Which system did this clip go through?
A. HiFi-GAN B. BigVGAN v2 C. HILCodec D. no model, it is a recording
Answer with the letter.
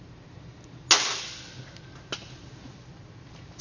D